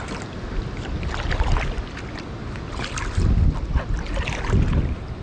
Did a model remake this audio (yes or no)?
no